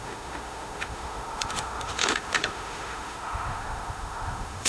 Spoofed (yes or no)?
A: yes